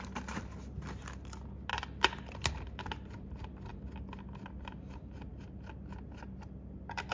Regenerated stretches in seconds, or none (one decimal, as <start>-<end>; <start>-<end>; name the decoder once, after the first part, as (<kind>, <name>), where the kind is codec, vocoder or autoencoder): none